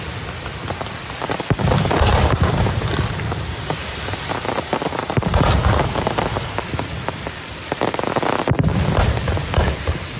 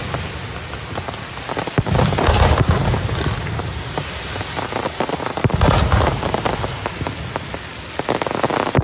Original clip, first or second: second